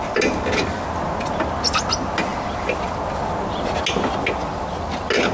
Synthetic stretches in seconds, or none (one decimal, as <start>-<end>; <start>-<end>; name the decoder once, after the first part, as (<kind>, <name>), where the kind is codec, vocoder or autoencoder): none